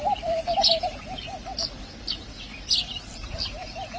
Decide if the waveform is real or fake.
real